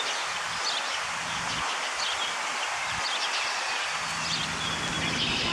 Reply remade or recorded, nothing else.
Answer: recorded